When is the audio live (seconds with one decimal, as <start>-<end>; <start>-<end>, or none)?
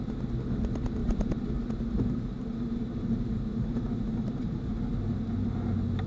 0.0-1.0; 4.7-6.1